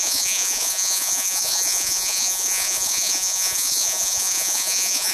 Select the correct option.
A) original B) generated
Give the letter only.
B